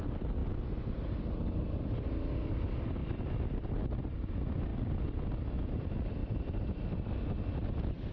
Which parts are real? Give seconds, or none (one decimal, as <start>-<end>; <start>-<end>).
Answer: 0.0-8.1